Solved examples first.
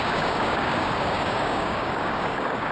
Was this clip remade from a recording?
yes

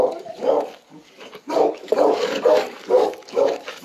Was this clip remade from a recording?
yes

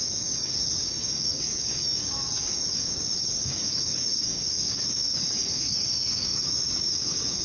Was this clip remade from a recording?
yes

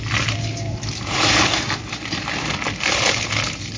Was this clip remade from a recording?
no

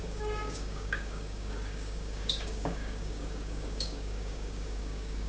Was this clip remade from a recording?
yes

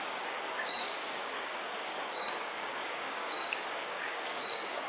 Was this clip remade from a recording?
yes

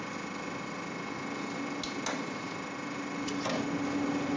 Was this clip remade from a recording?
no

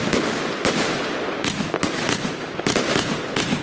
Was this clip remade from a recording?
no